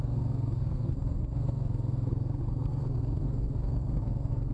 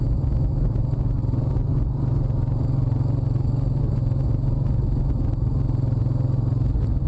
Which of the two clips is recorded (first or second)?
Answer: second